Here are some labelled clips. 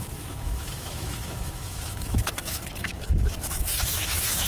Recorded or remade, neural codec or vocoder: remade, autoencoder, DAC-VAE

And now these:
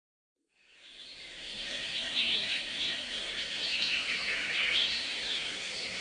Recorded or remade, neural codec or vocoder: remade, codec, SNAC